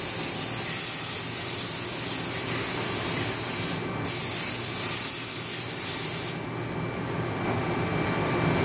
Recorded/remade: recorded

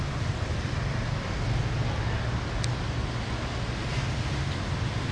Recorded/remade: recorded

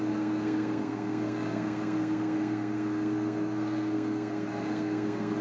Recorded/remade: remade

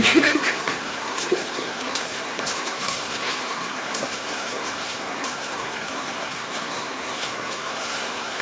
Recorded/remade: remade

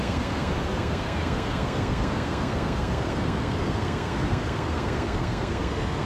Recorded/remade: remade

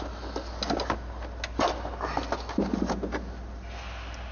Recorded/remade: recorded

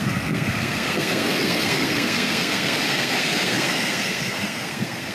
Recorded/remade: remade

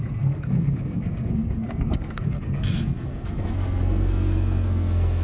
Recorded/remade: remade